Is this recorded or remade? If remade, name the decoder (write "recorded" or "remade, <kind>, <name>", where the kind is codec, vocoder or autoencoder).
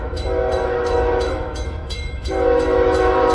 remade, autoencoder, DAC-VAE